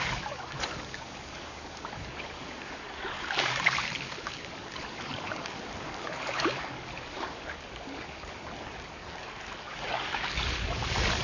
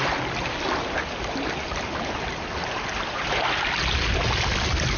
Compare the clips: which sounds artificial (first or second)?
first